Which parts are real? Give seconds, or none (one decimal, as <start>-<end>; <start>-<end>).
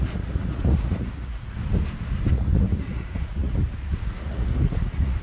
1.6-2.3